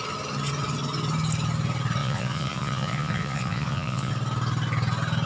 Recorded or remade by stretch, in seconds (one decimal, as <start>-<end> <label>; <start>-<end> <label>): 0.0-2.0 recorded; 2.0-4.1 remade; 4.1-5.3 recorded